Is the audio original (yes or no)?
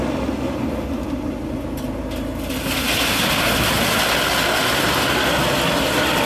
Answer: yes